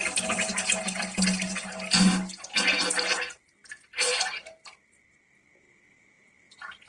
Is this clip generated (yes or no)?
no